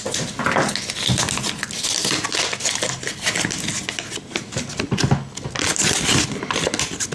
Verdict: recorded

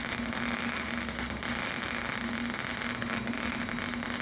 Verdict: recorded